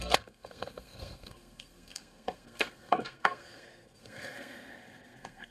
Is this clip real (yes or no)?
no